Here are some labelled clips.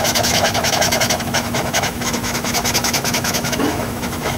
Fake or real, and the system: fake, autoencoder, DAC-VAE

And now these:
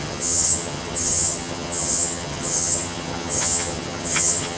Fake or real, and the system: fake, vocoder, HiFi-GAN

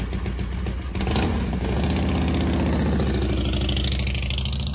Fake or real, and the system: real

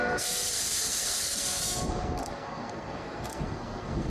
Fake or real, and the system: fake, codec, SNAC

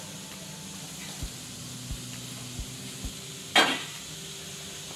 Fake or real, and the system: real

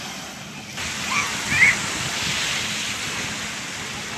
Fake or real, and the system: real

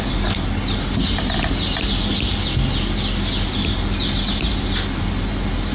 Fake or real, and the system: real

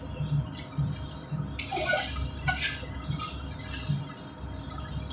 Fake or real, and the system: real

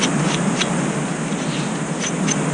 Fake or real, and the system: real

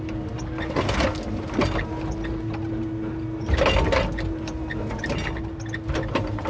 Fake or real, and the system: real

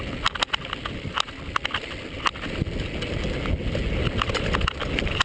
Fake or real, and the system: real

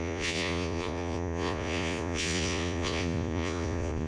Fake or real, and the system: fake, vocoder, Vocos